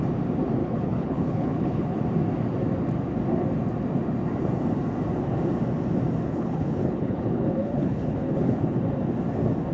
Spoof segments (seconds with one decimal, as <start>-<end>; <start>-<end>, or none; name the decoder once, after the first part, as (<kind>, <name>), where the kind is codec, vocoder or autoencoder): 0.6-2.0 (codec, HILCodec); 6.3-8.8